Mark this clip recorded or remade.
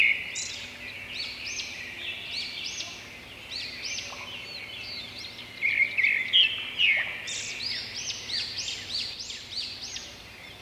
recorded